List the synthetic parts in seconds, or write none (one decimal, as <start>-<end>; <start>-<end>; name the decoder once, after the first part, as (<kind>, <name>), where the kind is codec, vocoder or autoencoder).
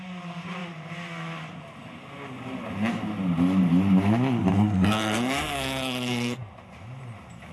4.5-6.5 (codec, SNAC)